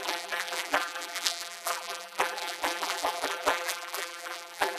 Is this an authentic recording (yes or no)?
no